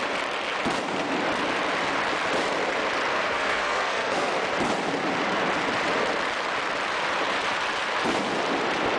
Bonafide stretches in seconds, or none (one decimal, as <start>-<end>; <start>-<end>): 0.0-3.1; 4.3-9.0